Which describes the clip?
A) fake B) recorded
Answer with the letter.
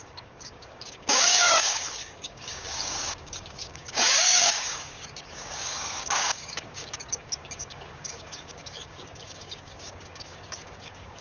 A